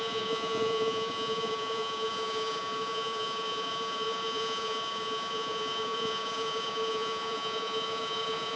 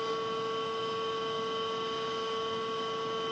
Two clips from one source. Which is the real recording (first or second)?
second